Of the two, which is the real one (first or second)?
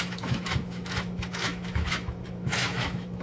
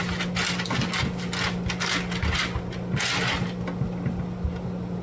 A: second